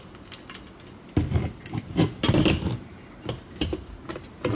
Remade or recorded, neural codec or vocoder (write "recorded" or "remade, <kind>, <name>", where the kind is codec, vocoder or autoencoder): recorded